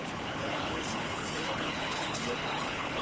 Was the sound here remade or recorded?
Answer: remade